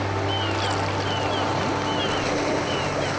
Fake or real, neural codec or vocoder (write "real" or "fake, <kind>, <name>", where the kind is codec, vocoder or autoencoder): real